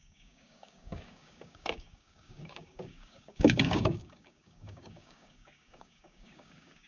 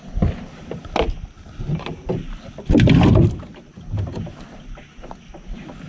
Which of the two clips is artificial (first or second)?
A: first